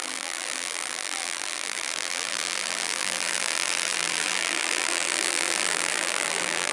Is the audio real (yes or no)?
no